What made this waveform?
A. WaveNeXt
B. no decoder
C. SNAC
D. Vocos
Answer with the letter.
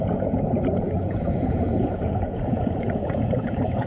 D